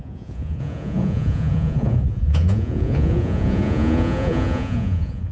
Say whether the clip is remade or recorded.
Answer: remade